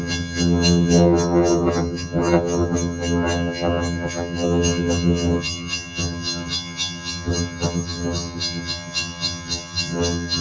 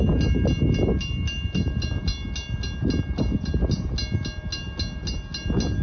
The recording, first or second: second